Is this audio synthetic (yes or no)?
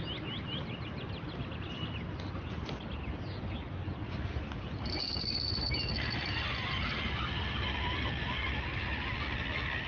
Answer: no